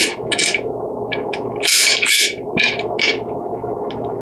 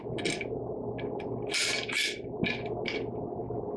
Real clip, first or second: second